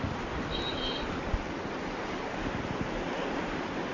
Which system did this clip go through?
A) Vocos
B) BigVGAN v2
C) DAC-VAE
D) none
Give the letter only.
D